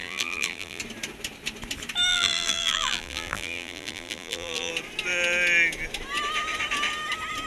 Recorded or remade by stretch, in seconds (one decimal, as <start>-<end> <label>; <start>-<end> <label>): 0.0-0.8 remade; 0.8-2.1 recorded; 2.1-4.7 remade; 4.7-7.5 recorded